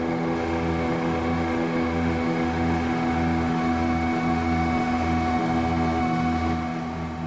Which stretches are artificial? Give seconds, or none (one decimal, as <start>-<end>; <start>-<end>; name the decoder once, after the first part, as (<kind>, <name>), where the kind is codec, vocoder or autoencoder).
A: 0.0-5.4 (autoencoder, DAC-VAE); 6.0-7.3